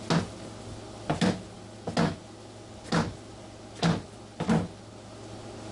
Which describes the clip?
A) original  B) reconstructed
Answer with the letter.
A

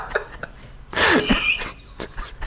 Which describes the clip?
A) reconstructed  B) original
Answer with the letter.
B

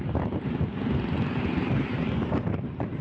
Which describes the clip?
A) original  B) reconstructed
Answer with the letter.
A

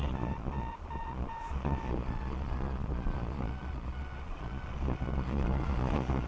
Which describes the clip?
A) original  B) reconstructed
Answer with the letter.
B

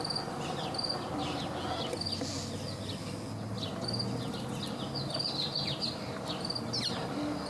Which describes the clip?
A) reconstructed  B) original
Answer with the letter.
B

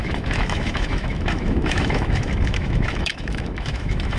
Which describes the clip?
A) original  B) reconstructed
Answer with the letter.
B